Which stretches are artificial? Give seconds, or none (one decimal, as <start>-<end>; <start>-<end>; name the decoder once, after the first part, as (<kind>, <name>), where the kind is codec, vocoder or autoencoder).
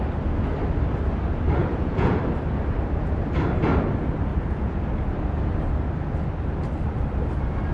1.6-2.2 (vocoder, Vocos); 4.3-4.8